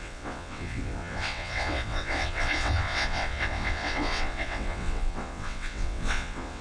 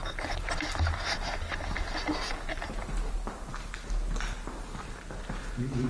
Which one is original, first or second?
second